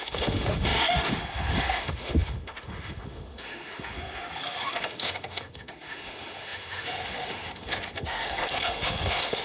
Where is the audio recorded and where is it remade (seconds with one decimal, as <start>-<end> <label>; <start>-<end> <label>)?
0.0-9.4 remade